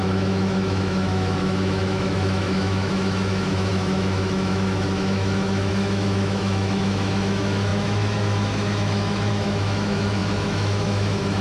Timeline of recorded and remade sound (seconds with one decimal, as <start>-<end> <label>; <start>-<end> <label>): 0.0-11.4 remade